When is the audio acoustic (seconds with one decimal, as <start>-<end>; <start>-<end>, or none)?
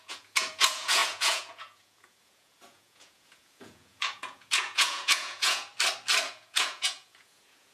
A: 5.7-6.3